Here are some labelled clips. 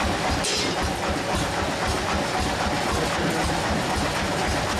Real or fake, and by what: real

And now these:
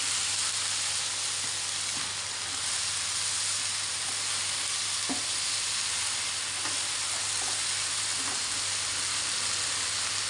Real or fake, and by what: real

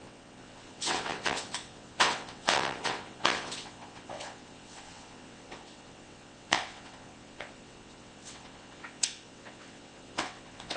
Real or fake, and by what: fake, vocoder, WaveNeXt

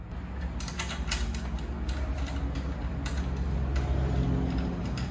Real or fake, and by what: real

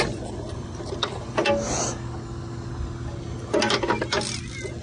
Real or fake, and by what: real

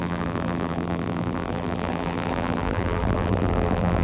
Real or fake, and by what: fake, vocoder, BigVGAN v2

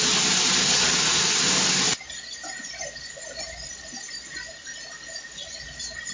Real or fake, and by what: real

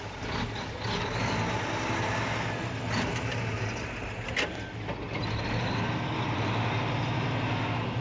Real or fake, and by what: real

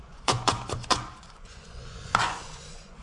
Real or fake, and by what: fake, vocoder, Vocos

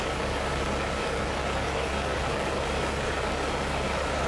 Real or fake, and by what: fake, codec, DAC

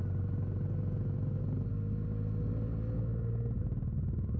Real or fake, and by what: real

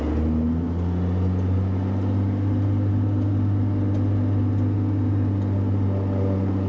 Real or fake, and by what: real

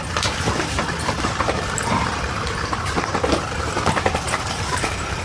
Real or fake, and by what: fake, vocoder, BigVGAN v2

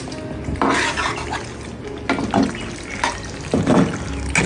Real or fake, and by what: real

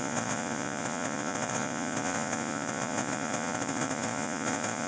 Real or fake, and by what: fake, vocoder, Vocos